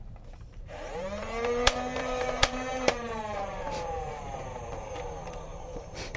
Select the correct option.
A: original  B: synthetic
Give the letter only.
B